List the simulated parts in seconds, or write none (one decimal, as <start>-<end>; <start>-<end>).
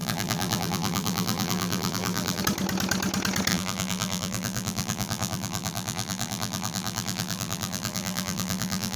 0.0-2.4; 3.5-9.0